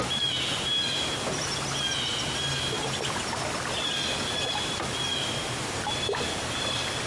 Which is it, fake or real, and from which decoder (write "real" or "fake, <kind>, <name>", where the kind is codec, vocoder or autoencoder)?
real